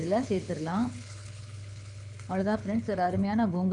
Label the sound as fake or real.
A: fake